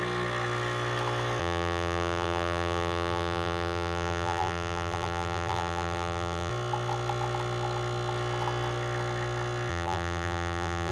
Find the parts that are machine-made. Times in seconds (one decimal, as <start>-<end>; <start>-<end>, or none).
1.4-6.5; 9.7-10.9